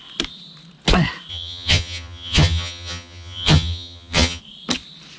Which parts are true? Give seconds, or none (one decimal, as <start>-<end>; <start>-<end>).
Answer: 0.0-1.3; 4.4-5.2